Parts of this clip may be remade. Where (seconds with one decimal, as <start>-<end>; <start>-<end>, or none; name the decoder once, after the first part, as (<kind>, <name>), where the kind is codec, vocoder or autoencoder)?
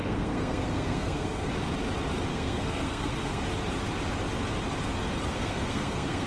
0.0-1.5 (codec, SNAC); 2.3-3.4; 5.3-6.3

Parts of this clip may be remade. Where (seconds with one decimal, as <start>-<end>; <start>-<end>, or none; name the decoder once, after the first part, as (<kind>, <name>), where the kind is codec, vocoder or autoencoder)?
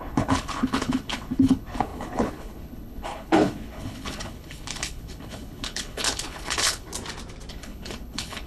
0.0-6.9 (codec, HILCodec); 7.5-8.5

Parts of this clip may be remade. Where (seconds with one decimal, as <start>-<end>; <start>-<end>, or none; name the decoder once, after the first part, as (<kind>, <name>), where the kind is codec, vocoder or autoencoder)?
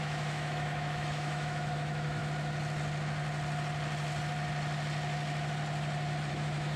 0.0-2.2 (autoencoder, DAC-VAE); 6.3-6.8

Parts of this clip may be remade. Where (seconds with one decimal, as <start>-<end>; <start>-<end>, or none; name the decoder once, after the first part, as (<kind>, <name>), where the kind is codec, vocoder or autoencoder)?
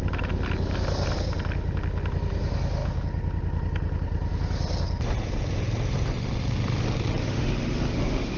7.2-8.4 (autoencoder, DAC-VAE)